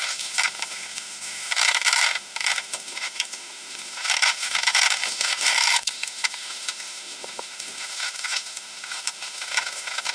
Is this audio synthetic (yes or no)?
yes